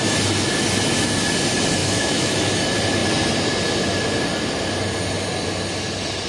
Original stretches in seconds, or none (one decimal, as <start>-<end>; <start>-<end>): 0.0-1.8; 2.3-6.3